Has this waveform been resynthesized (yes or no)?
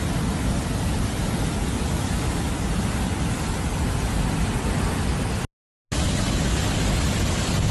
no